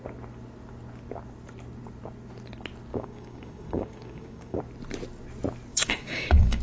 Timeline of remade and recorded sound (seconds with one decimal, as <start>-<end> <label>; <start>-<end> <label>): 0.0-2.9 recorded; 2.9-4.6 remade; 4.6-5.7 recorded; 5.7-6.6 remade